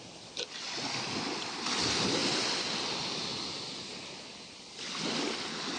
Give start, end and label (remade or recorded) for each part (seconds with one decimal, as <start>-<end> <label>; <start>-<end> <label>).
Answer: 0.0-5.8 recorded